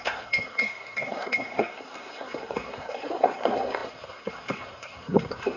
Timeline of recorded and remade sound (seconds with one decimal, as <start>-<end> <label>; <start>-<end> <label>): 0.0-5.6 remade